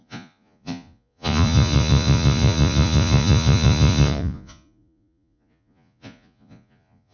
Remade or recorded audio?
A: remade